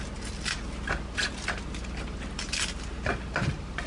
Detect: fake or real real